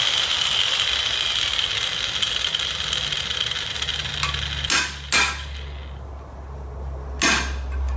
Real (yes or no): yes